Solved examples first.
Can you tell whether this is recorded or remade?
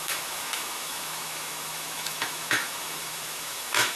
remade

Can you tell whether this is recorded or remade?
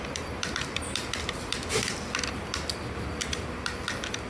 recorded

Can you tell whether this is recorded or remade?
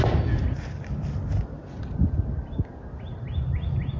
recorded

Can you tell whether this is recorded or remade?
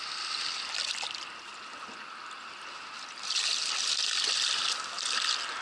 recorded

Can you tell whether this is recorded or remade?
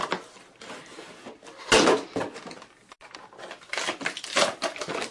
recorded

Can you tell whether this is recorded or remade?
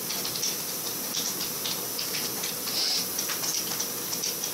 recorded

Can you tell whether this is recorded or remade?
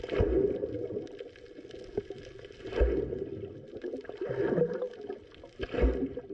recorded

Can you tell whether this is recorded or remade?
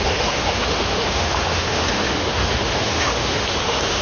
remade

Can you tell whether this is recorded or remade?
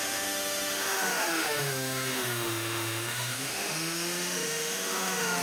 remade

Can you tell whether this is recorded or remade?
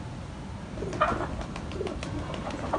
recorded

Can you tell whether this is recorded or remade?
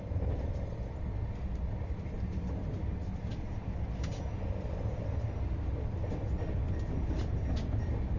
recorded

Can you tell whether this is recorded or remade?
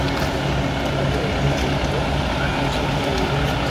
recorded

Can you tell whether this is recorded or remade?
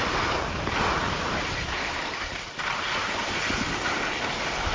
recorded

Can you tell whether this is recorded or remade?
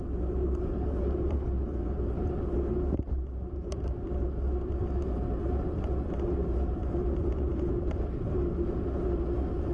recorded